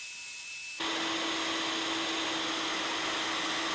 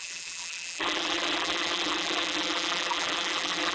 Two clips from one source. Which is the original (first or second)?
first